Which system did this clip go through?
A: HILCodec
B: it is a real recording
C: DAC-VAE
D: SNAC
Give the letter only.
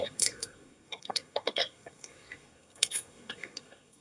D